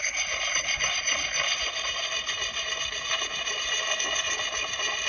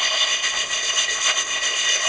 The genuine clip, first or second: first